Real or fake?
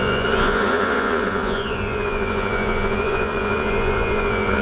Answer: fake